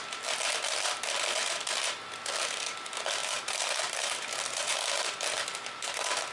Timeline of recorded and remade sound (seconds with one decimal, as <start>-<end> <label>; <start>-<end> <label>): 0.0-3.2 recorded; 3.2-4.7 remade; 4.7-6.3 recorded